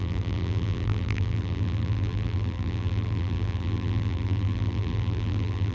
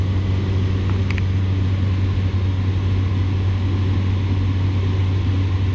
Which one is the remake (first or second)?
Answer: first